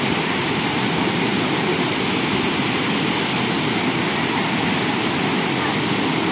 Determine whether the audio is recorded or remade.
recorded